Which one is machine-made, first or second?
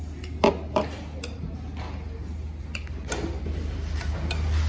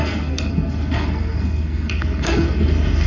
second